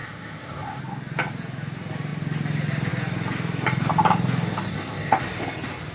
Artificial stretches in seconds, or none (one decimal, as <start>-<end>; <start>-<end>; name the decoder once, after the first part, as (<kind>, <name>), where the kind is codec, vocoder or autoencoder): 0.0-0.8 (codec, ZipCodec); 4.7-5.2